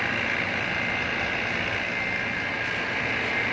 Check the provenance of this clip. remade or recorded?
recorded